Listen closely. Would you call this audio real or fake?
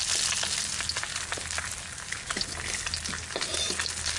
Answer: real